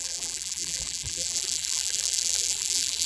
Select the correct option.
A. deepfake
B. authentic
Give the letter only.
A